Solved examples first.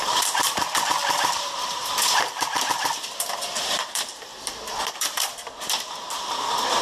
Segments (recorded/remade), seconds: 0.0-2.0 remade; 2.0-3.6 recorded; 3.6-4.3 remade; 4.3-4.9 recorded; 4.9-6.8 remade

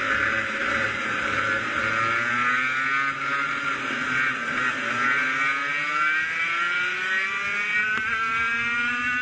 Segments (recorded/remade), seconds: 0.0-0.6 recorded; 0.6-1.8 remade; 1.8-9.2 recorded

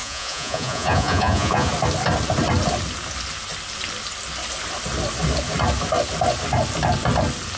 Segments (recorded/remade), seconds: 0.0-1.7 remade; 1.7-7.6 recorded